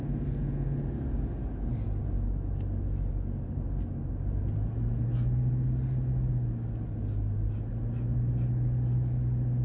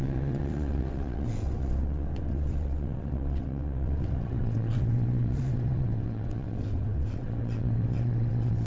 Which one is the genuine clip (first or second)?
first